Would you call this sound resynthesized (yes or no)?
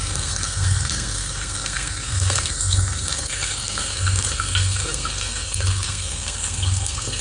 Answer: yes